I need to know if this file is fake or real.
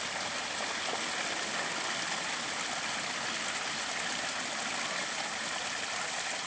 real